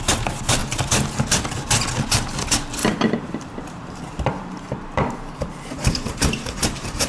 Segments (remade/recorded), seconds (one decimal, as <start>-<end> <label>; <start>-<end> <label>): 0.0-0.6 recorded; 0.6-1.2 remade; 1.2-2.8 recorded; 2.8-7.1 remade